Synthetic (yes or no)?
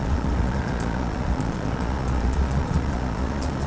yes